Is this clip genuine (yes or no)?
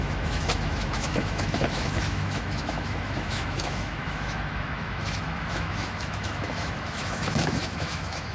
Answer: no